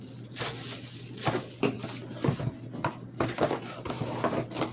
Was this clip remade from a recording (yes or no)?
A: no